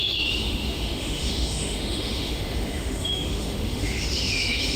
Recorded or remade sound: remade